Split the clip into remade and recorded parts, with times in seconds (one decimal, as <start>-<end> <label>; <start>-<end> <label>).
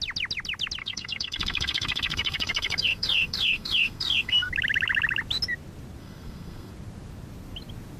0.0-0.8 recorded; 0.8-4.5 remade; 4.5-6.0 recorded; 6.0-6.7 remade; 6.7-8.0 recorded